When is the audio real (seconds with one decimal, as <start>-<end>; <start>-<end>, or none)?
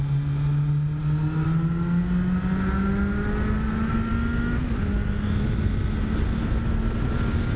0.0-7.6